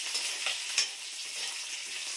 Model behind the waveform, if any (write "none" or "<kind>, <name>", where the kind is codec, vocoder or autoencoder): none